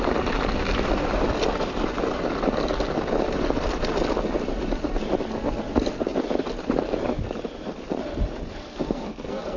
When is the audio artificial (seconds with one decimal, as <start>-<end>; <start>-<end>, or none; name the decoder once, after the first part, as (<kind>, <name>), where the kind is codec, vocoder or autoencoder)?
8.6-9.6 (codec, SNAC)